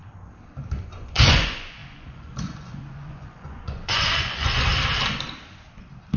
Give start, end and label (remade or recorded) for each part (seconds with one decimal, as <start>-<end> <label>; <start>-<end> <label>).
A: 0.0-0.8 recorded; 0.8-4.7 remade; 4.7-6.2 recorded